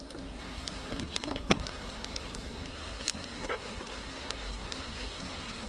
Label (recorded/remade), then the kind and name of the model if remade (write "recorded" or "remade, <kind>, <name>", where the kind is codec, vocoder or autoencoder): remade, codec, SNAC